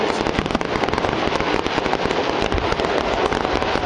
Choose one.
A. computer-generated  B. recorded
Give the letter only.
B